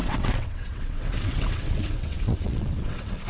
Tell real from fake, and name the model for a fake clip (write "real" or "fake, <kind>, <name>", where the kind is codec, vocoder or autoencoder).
fake, vocoder, WaveNeXt